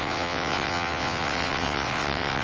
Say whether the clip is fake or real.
fake